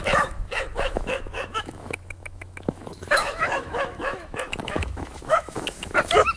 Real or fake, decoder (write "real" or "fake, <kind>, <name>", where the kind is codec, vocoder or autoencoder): fake, autoencoder, DAC-VAE